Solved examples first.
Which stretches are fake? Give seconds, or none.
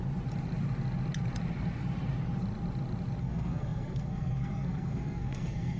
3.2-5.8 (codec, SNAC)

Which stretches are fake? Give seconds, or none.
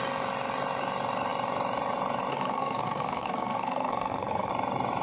2.3-4.5 (codec, SNAC)